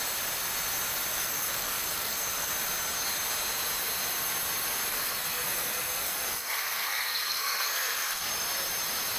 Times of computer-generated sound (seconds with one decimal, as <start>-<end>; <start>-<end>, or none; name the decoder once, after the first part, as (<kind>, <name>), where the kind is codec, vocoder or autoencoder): 1.1-2.5 (codec, SNAC); 4.9-8.3